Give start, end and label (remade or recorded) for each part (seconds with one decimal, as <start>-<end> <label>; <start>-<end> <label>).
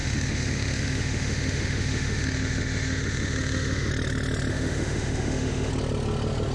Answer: 0.0-3.9 remade; 3.9-4.5 recorded; 4.5-5.7 remade; 5.7-6.5 recorded